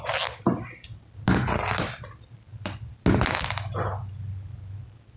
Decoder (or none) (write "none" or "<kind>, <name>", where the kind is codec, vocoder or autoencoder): none